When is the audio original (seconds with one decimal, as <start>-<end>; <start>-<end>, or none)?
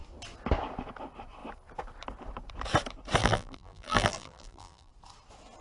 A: 0.0-3.2; 4.9-5.6